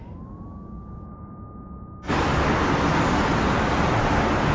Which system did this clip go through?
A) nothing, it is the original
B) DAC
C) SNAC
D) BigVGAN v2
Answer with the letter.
A